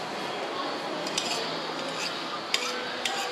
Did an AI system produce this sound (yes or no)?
no